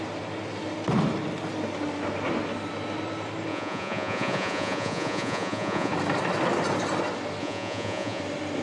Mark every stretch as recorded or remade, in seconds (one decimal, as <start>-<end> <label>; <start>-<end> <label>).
0.0-3.5 recorded; 3.5-5.9 remade; 5.9-7.4 recorded; 7.4-8.2 remade; 8.2-8.6 recorded